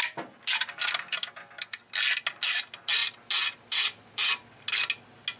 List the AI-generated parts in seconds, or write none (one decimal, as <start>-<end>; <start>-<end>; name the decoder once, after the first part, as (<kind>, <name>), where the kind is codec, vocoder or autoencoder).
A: none